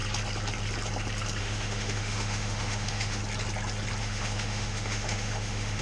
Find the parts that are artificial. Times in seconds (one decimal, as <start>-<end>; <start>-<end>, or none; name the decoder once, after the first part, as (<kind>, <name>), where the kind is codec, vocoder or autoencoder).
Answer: 1.4-3.2 (autoencoder, DAC-VAE); 4.0-5.8